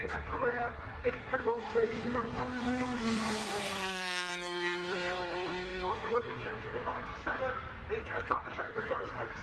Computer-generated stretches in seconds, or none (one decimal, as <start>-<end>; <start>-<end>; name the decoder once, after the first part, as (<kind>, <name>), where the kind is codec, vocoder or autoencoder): 0.0-7.4 (codec, SNAC); 8.0-9.4